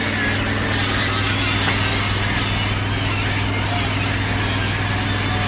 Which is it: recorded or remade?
recorded